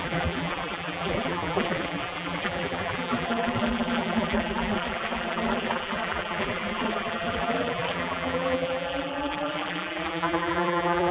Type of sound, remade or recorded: remade